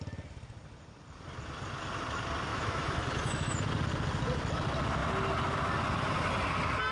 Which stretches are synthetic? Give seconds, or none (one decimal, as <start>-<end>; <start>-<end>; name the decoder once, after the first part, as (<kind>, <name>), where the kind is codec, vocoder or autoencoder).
2.5-3.7 (autoencoder, DAC-VAE)